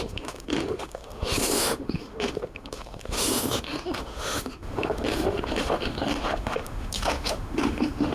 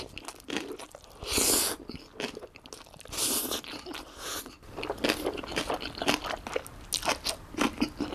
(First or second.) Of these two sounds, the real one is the second